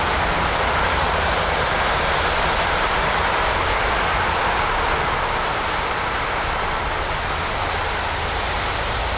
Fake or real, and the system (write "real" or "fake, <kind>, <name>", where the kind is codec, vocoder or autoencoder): real